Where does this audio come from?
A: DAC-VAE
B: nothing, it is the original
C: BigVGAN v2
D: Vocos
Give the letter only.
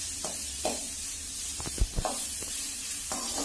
C